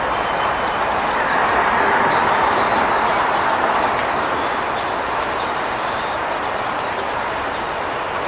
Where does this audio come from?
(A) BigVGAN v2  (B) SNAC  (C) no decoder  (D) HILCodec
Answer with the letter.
C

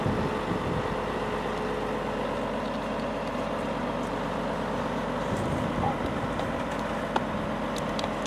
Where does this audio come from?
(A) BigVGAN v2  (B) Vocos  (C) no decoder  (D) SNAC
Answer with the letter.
C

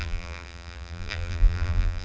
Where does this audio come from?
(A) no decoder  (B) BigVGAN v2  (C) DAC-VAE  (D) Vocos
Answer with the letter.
B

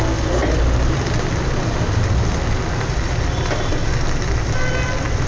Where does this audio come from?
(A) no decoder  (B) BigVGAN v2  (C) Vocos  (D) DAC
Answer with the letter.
A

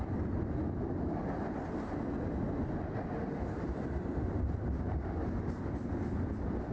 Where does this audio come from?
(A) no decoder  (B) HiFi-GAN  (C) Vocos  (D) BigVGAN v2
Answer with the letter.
A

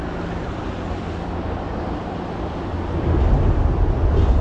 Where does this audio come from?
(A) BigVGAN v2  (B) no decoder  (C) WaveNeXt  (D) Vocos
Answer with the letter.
A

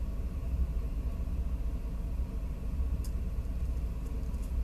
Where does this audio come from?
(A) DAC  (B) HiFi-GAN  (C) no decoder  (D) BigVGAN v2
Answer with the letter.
D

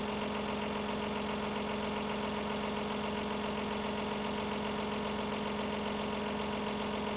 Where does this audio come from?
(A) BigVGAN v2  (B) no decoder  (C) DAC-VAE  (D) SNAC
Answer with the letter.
B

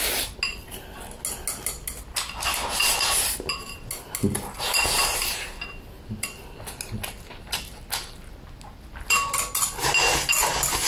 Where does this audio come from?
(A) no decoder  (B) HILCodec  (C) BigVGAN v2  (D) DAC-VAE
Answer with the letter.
A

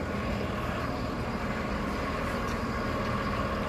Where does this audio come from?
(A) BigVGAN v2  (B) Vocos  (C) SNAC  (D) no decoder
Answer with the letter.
D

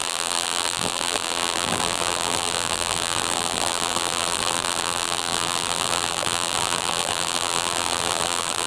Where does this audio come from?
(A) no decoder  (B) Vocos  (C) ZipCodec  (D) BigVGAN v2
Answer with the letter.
D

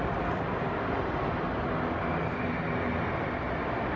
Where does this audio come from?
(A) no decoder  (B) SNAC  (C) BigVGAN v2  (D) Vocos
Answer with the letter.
A